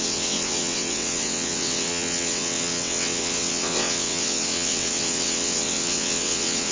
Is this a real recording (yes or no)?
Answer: no